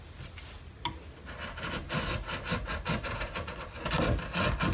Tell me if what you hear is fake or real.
real